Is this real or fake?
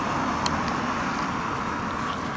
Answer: real